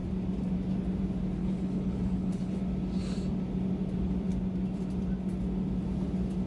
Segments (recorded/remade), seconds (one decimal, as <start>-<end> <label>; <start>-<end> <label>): 0.0-1.4 recorded; 1.4-2.6 remade; 2.6-6.5 recorded